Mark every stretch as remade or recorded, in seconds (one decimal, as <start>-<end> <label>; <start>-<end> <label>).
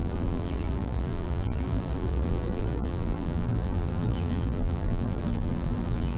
0.0-6.2 remade